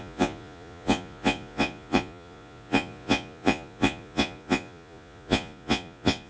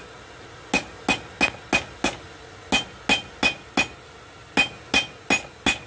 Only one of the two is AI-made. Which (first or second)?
first